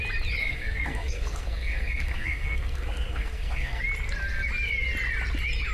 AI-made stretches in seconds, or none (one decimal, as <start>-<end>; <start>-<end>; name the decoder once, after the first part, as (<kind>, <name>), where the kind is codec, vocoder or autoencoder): 0.4-3.8 (codec, SNAC)